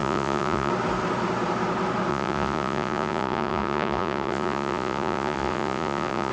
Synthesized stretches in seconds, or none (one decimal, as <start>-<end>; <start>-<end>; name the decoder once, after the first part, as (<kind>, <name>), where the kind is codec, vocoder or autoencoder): 0.0-0.7 (vocoder, Vocos); 2.1-6.3